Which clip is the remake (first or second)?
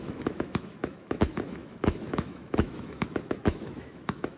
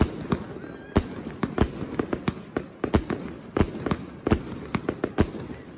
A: first